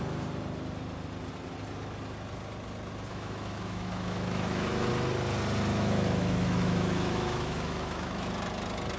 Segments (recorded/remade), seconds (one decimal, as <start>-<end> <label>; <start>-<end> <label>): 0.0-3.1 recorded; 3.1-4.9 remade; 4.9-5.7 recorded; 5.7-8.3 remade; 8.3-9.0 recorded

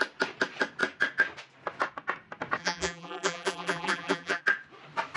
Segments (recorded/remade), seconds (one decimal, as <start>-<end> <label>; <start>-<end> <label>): 0.0-2.6 recorded; 2.6-4.4 remade; 4.4-5.2 recorded

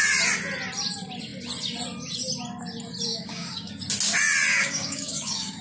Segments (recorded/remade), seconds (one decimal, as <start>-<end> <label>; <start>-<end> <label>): 0.0-3.1 recorded; 3.1-3.7 remade; 3.7-4.5 recorded; 4.5-5.6 remade